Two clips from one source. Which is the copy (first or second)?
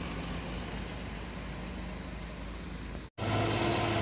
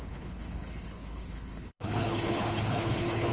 second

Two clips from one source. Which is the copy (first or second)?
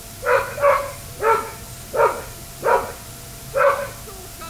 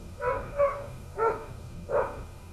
second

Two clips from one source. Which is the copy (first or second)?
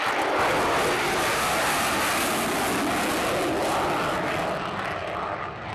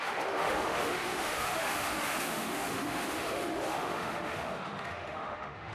second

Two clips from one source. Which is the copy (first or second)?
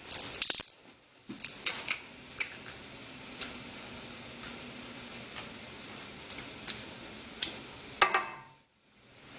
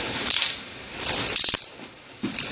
second